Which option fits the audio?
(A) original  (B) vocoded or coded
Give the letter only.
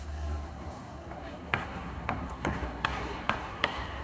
B